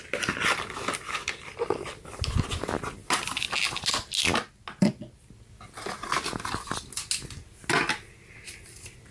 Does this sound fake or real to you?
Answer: real